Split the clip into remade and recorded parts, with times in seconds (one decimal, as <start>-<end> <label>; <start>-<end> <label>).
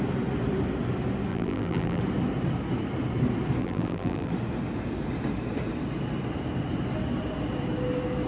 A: 0.0-1.3 recorded; 1.3-2.0 remade; 2.0-3.6 recorded; 3.6-4.3 remade; 4.3-8.3 recorded